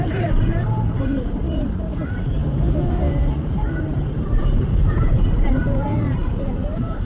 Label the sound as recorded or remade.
remade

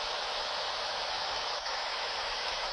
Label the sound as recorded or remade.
remade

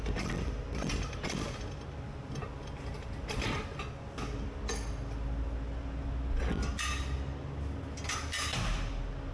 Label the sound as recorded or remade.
recorded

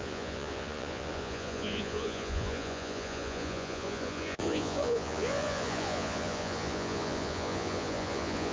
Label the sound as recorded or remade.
remade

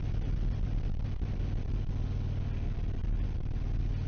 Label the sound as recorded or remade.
recorded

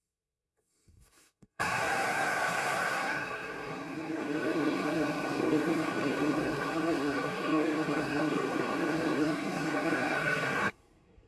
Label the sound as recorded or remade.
remade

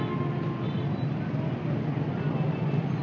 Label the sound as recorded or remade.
recorded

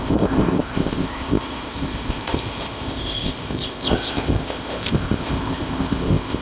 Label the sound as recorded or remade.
remade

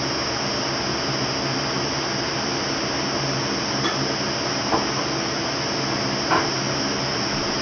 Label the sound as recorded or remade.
recorded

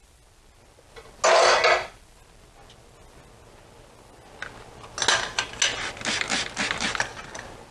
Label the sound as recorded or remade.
recorded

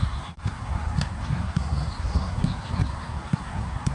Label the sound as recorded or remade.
remade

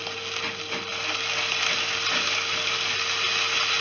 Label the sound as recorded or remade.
recorded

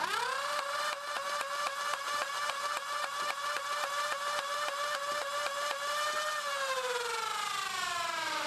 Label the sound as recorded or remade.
recorded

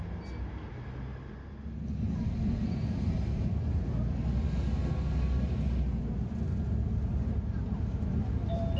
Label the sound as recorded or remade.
recorded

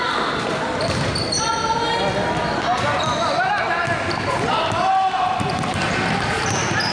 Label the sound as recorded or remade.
recorded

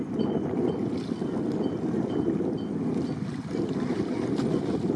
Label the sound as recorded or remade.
recorded